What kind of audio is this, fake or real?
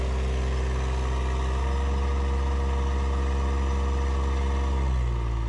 real